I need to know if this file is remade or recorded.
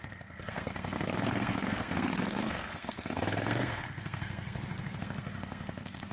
remade